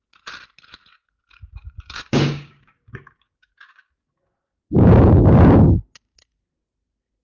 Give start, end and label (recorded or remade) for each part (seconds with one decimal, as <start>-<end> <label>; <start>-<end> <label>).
0.0-0.9 recorded; 0.9-5.2 remade; 5.2-7.2 recorded